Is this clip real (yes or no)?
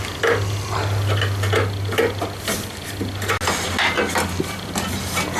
yes